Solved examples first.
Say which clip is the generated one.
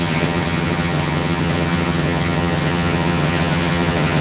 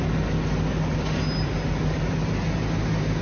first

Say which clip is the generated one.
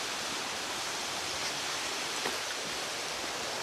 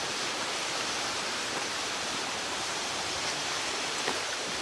second